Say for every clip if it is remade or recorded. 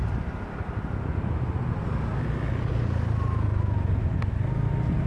recorded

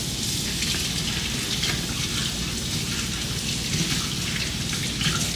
recorded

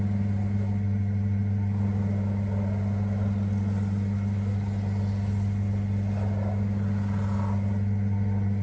recorded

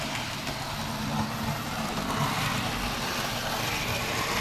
recorded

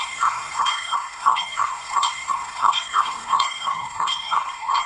remade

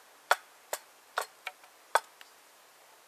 recorded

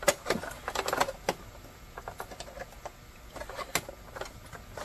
recorded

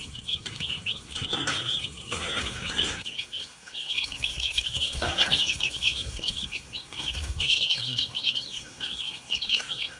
remade